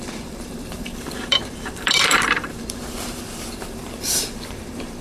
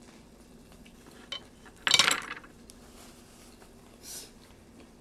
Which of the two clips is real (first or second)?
second